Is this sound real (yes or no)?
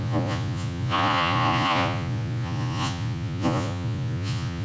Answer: no